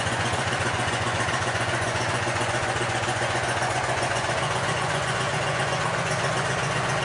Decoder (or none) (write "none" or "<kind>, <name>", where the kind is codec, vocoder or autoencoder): vocoder, Vocos